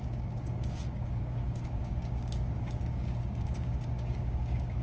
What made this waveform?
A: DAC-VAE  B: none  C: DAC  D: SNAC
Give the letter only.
C